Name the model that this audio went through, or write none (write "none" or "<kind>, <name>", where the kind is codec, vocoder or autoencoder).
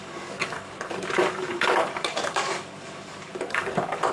codec, DAC